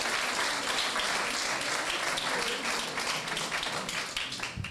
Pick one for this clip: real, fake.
real